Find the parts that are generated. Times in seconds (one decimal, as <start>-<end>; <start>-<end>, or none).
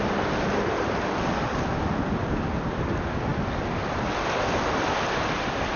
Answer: none